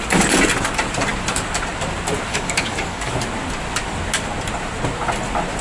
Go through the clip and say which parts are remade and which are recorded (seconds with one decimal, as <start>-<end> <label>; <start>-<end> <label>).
0.0-2.3 recorded; 2.3-3.1 remade; 3.1-5.6 recorded